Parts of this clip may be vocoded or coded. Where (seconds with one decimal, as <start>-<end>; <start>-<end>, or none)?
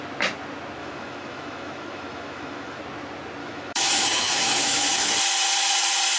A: 0.8-2.8; 3.4-5.1